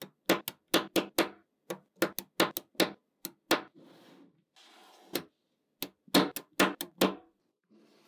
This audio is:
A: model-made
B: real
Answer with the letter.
B